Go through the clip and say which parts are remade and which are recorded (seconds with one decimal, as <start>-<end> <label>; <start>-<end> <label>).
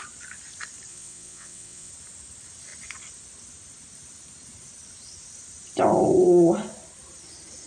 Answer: 0.0-0.9 recorded; 0.9-1.9 remade; 1.9-7.7 recorded